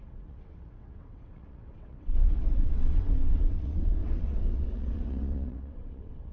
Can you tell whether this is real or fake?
fake